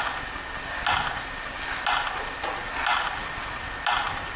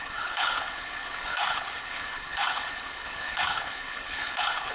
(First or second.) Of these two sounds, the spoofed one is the second